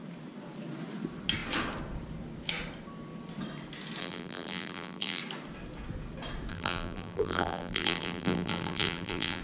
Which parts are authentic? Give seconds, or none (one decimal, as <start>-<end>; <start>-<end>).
0.0-4.0; 5.2-6.5